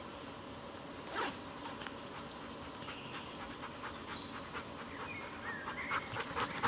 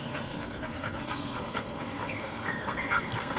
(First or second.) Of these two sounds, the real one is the first